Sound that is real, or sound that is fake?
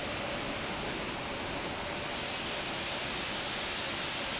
real